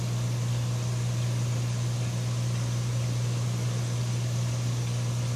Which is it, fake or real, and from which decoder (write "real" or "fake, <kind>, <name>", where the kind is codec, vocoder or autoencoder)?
real